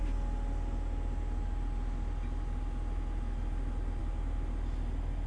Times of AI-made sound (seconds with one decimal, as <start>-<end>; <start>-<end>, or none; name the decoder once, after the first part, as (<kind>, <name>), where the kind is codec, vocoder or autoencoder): none